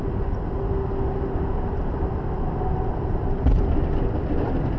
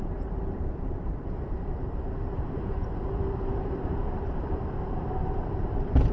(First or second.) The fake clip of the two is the second